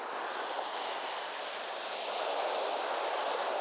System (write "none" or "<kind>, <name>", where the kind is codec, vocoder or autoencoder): none